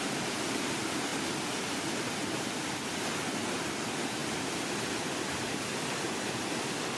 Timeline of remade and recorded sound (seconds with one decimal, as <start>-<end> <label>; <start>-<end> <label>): 0.0-7.0 recorded